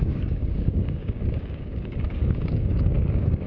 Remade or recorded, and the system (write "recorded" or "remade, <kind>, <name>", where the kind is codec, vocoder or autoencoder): remade, codec, DAC